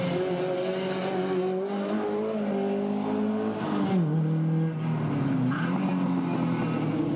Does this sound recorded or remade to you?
recorded